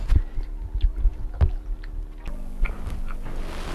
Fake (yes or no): no